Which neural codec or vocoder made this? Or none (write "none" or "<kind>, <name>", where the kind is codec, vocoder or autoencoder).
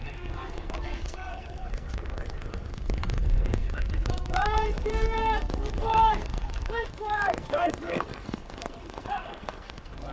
codec, SNAC